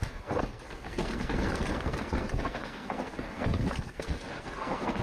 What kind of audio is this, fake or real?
fake